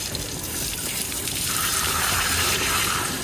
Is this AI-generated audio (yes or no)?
yes